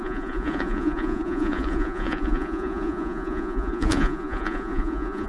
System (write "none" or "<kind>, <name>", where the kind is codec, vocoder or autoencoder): vocoder, Vocos